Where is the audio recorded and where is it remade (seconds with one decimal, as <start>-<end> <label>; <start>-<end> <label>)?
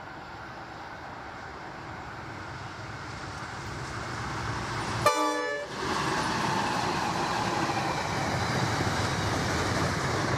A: 0.0-1.5 recorded; 1.5-2.4 remade; 2.4-7.3 recorded; 7.3-9.1 remade; 9.1-10.4 recorded